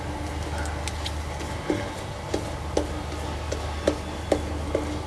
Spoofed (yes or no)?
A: no